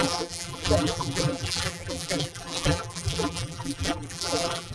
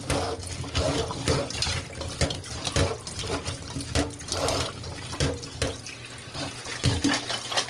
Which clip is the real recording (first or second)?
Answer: second